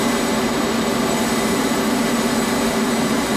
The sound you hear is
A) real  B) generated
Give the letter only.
B